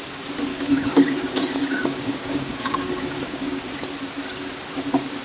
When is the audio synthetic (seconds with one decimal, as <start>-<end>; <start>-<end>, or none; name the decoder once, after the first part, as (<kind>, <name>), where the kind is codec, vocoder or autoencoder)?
0.5-3.6 (codec, DAC)